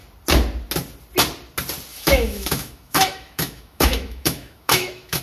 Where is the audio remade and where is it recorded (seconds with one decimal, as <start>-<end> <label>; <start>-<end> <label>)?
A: 0.0-1.9 recorded; 1.9-5.2 remade